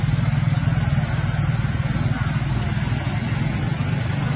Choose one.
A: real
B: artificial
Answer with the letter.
A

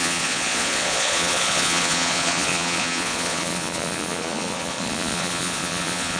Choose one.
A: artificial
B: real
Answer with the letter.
A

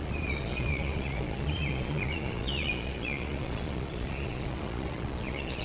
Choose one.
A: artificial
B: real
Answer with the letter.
A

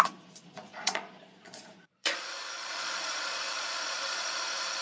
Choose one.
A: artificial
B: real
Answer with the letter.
A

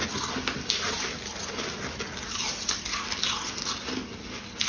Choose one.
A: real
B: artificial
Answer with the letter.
A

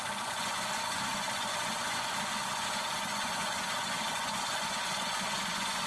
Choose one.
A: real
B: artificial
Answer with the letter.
B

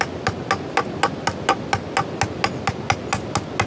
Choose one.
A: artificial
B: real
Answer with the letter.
B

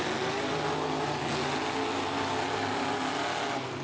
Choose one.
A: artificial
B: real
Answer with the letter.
B